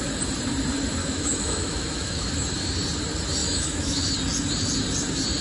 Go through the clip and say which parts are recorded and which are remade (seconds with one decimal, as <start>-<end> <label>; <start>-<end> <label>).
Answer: 0.0-1.0 recorded; 1.0-2.3 remade; 2.3-3.4 recorded; 3.4-4.1 remade; 4.1-5.4 recorded

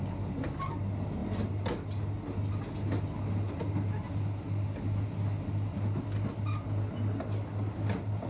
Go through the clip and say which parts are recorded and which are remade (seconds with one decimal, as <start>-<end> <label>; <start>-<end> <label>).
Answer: 0.0-8.3 recorded

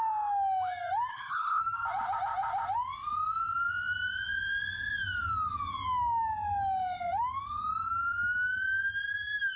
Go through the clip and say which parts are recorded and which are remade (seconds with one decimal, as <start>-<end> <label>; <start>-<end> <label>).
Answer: 0.0-1.1 recorded; 1.1-1.6 remade; 1.6-9.6 recorded

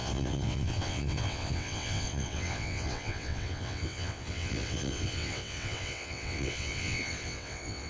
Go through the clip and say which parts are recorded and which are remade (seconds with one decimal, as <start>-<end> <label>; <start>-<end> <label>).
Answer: 0.0-7.9 remade

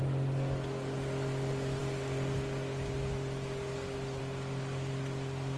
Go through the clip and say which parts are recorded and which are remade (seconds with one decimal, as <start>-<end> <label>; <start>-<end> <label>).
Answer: 0.0-5.6 recorded

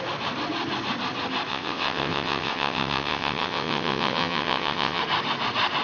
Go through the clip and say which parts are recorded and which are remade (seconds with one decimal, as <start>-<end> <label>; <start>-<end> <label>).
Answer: 0.0-1.5 recorded; 1.5-5.0 remade; 5.0-5.8 recorded

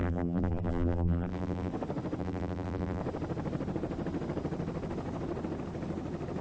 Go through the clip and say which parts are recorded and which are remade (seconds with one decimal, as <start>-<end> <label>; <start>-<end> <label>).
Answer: 0.0-1.7 remade; 1.7-2.2 recorded; 2.2-3.0 remade; 3.0-6.4 recorded

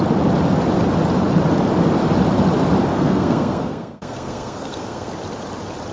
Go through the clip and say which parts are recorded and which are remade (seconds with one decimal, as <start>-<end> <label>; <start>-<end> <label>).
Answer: 0.0-2.9 recorded; 2.9-5.1 remade; 5.1-5.9 recorded